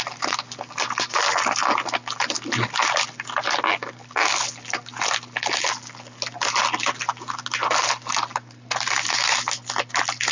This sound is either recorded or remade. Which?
recorded